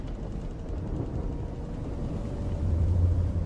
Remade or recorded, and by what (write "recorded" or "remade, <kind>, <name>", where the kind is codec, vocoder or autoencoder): recorded